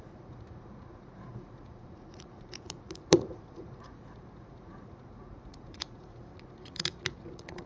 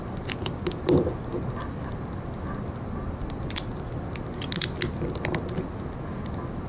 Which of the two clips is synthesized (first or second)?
first